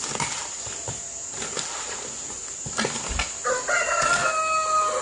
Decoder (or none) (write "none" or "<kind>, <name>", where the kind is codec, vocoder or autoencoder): none